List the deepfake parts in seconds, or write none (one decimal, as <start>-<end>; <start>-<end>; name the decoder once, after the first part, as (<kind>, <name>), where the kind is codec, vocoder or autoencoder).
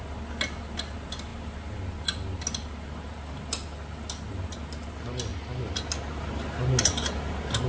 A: none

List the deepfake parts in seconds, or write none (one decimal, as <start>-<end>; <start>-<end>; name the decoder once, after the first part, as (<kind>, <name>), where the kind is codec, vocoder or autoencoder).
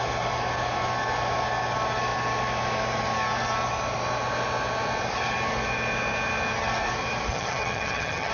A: 7.3-8.3 (vocoder, HiFi-GAN)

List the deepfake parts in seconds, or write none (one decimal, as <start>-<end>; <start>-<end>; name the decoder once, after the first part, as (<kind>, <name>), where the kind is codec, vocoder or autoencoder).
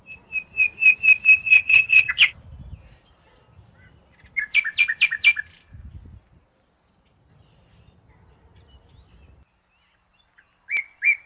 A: 1.5-2.1 (vocoder, HiFi-GAN)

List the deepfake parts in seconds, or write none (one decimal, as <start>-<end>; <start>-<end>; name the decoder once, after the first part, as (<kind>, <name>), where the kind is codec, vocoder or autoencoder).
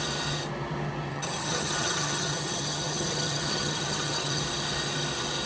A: 1.1-4.4 (vocoder, HiFi-GAN)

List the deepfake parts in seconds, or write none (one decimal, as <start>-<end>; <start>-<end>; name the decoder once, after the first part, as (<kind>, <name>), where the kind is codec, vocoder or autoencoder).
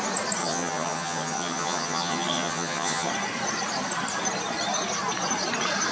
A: 0.4-3.1 (vocoder, HiFi-GAN)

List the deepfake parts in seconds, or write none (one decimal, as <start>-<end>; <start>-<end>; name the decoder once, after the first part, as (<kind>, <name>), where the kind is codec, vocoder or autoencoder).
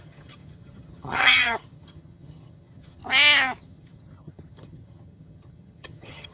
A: 0.0-3.0 (vocoder, HiFi-GAN); 3.6-6.3